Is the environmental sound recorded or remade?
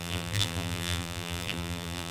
remade